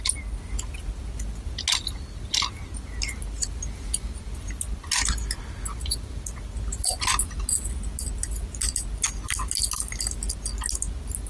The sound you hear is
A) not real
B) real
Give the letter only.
B